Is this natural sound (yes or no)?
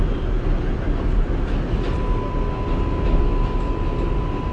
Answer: yes